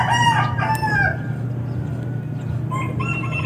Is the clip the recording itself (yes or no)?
yes